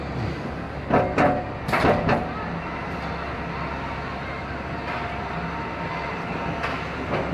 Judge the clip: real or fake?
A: real